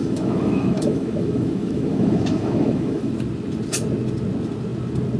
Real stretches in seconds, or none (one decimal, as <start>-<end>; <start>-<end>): 3.1-5.2